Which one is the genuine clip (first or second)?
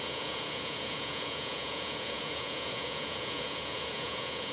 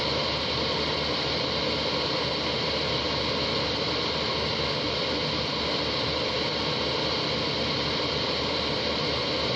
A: second